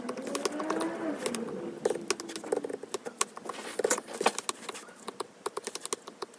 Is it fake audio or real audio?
real